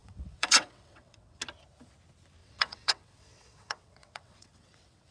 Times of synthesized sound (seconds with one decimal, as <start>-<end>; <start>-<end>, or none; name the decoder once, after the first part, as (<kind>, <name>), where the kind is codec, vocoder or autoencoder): 0.0-1.4 (vocoder, WaveNeXt); 2.4-5.1